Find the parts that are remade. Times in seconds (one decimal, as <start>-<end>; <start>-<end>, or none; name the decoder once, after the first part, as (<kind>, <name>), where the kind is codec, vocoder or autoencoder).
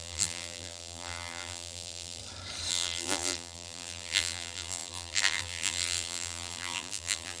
0.0-2.2 (vocoder, BigVGAN v2); 2.7-7.4